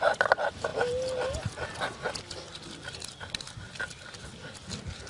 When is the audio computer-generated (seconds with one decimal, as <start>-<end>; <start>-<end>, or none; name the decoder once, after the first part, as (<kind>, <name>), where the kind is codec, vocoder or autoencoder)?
none